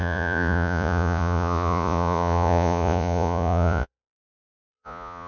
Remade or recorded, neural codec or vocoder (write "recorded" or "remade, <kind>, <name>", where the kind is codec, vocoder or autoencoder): remade, vocoder, Vocos